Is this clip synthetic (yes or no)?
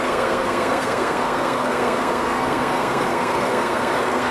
yes